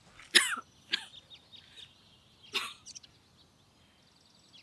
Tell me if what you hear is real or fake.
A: real